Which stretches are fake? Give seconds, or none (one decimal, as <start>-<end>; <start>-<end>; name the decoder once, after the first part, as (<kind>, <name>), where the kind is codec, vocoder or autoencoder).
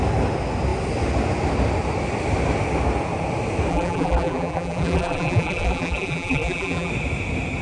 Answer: 3.7-6.9 (vocoder, BigVGAN v2)